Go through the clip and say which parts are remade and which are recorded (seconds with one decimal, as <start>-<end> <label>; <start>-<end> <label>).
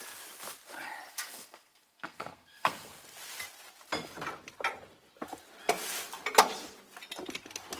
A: 0.0-1.1 recorded; 1.1-2.9 remade; 2.9-7.8 recorded